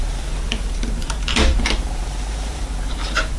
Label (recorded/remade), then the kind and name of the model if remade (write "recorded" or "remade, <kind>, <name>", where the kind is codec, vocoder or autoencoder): remade, vocoder, BigVGAN v2